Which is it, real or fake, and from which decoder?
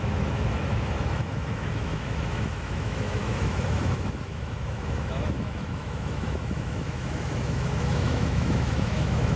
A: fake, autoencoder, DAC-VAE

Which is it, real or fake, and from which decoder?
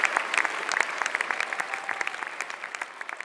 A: fake, vocoder, BigVGAN v2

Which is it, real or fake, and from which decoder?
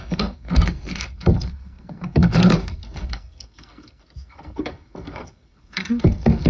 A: fake, codec, SNAC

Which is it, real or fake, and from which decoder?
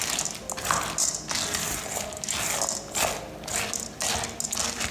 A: real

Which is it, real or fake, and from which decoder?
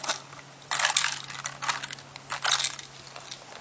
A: real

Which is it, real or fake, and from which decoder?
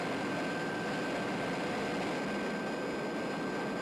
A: real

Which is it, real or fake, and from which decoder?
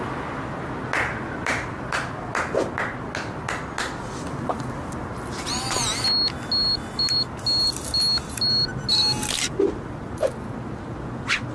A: real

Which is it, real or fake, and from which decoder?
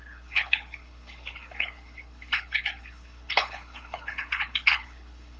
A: fake, codec, HILCodec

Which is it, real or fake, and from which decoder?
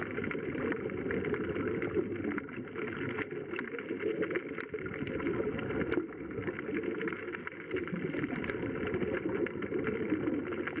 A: real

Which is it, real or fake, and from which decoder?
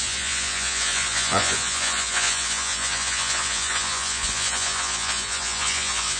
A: fake, vocoder, Vocos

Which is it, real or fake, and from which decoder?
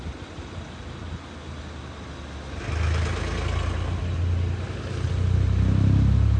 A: real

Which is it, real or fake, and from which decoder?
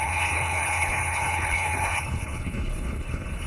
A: fake, codec, HILCodec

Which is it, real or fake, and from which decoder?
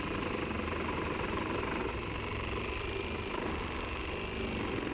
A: real